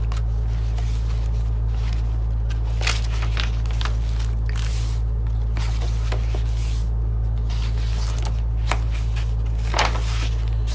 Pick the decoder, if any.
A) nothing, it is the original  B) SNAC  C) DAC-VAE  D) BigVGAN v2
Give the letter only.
A